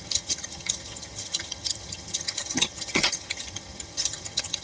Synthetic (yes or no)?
yes